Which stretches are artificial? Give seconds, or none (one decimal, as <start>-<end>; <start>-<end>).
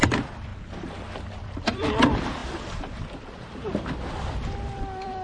0.0-0.5; 1.4-5.2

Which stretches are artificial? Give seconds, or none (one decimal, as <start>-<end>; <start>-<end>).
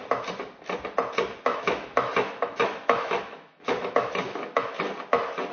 1.5-4.8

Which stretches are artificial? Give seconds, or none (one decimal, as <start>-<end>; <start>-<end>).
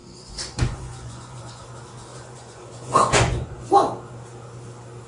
0.0-1.6; 2.1-3.7